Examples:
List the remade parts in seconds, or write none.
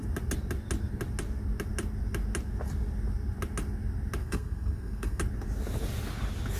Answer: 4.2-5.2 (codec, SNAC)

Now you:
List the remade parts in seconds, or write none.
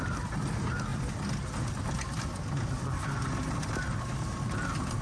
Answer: none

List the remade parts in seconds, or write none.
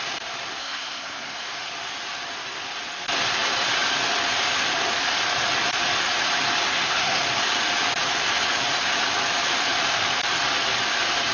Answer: 0.6-1.7 (codec, SNAC); 6.7-7.2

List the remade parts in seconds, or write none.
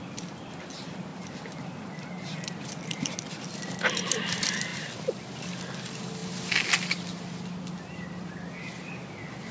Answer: none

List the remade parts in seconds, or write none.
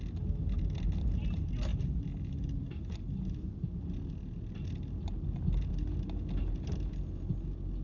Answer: none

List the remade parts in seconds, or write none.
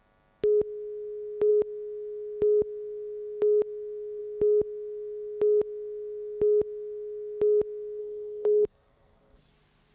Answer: 8.0-9.5 (codec, SNAC)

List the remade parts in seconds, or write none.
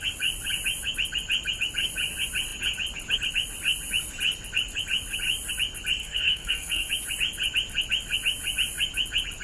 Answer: 6.0-6.9 (codec, SNAC)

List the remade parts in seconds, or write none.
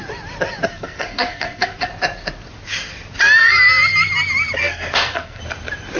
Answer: 0.7-1.9 (codec, SNAC); 4.6-5.4